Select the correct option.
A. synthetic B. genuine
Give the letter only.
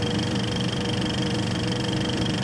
A